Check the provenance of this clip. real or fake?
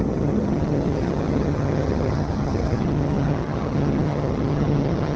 fake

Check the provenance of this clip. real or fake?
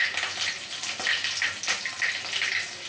real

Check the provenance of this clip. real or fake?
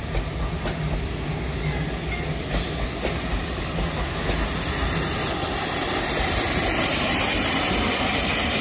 real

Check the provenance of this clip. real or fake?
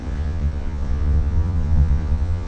fake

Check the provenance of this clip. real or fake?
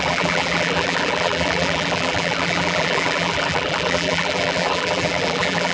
fake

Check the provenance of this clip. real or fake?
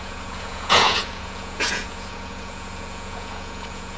fake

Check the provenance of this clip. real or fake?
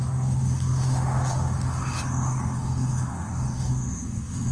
fake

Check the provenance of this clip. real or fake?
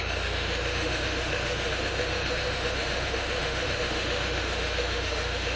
fake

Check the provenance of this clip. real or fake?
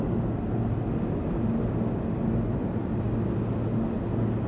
real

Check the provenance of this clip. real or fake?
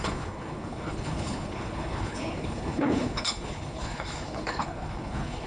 fake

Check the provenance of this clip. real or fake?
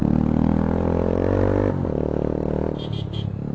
real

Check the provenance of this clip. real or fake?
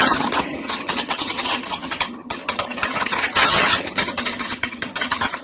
fake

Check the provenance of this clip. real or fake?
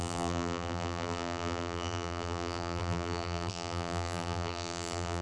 fake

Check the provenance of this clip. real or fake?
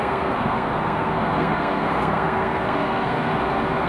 fake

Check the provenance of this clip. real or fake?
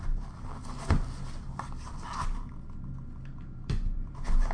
real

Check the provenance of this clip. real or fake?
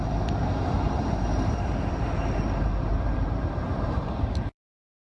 fake